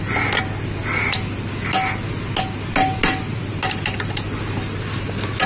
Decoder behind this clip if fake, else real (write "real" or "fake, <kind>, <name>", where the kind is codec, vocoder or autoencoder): real